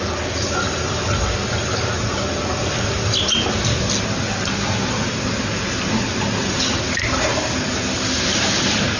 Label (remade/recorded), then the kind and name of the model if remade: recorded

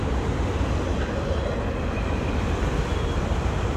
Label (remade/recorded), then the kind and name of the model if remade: recorded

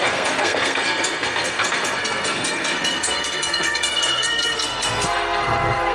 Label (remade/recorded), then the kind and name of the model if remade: remade, codec, SNAC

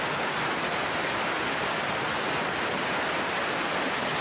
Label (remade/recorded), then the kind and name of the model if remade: recorded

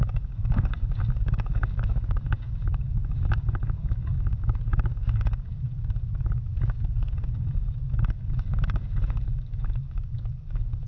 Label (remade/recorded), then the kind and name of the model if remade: remade, codec, DAC